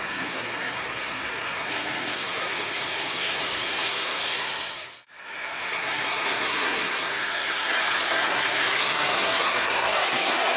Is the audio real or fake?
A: fake